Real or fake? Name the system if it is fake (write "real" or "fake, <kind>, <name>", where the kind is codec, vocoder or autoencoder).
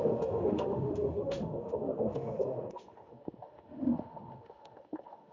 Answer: fake, autoencoder, DAC-VAE